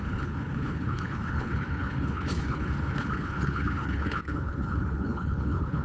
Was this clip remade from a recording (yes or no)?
yes